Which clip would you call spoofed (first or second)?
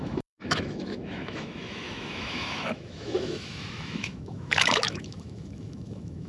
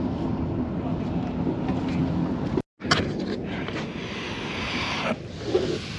first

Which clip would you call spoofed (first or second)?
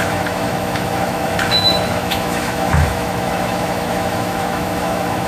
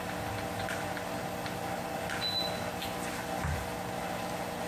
first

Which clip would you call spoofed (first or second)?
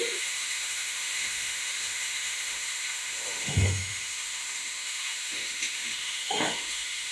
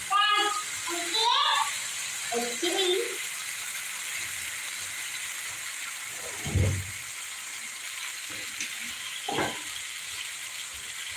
first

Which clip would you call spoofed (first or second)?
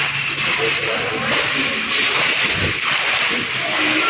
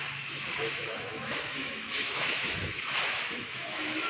second